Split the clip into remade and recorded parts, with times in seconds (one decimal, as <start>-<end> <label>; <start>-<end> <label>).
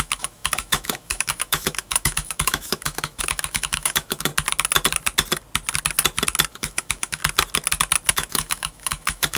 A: 0.0-4.3 remade; 4.3-6.5 recorded; 6.5-7.2 remade; 7.2-8.1 recorded; 8.1-9.4 remade